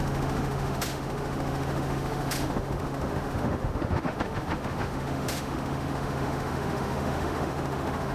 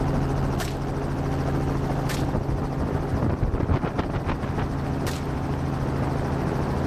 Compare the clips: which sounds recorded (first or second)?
second